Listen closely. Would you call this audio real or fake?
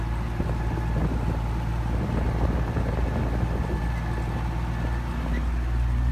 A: real